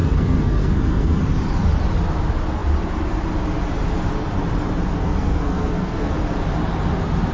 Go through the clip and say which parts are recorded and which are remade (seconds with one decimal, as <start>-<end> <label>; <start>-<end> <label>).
0.0-1.2 remade; 1.2-5.0 recorded; 5.0-6.1 remade; 6.1-7.3 recorded